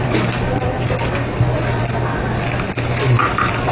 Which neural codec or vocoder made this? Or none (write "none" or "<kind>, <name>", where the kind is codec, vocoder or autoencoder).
none